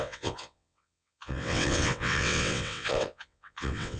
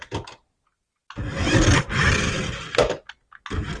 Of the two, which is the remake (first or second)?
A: first